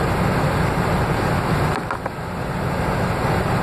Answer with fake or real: real